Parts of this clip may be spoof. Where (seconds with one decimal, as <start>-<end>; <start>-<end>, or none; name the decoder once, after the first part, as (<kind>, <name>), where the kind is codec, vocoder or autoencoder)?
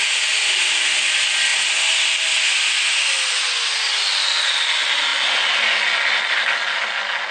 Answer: none